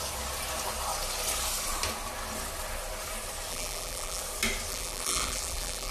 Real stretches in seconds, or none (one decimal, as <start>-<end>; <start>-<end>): 0.0-3.5; 4.2-4.7